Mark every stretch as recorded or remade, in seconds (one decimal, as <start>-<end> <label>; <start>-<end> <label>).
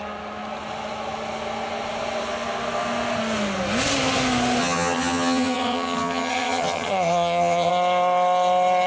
0.0-4.6 recorded; 4.6-7.7 remade; 7.7-8.9 recorded